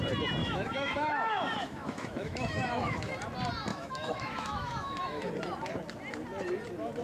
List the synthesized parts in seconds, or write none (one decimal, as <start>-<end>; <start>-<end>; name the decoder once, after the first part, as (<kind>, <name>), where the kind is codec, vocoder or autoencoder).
0.4-3.1 (autoencoder, DAC-VAE); 3.7-5.3